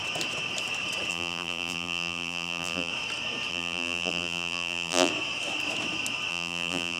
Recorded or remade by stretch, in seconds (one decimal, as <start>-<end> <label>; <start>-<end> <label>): 0.0-1.1 recorded; 1.1-2.9 remade; 2.9-3.5 recorded; 3.5-5.1 remade; 5.1-6.3 recorded; 6.3-7.0 remade